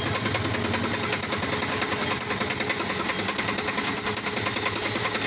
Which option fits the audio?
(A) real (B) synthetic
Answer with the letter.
A